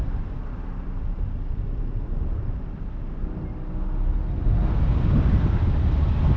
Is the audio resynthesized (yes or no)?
no